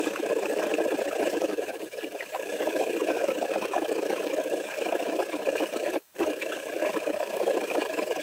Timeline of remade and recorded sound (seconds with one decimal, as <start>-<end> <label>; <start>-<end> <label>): 0.0-0.7 remade; 0.7-1.3 recorded; 1.3-8.2 remade